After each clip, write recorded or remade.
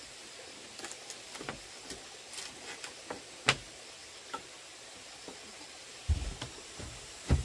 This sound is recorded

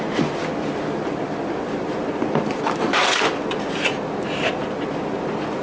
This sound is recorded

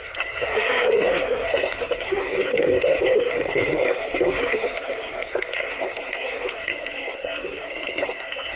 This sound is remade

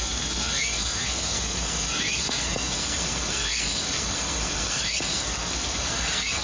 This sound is remade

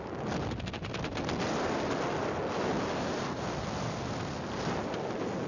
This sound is recorded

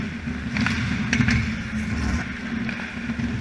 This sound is recorded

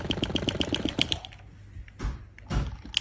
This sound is recorded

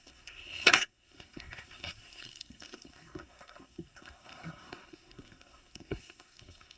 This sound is remade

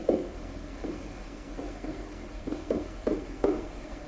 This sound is remade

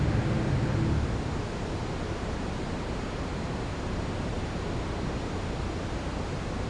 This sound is recorded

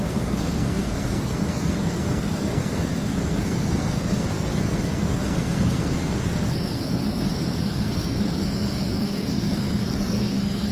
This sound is remade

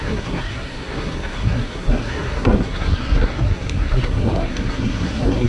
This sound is remade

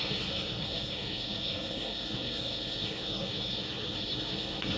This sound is remade